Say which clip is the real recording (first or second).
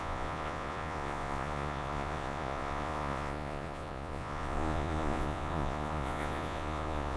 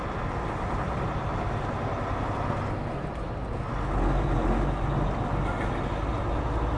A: second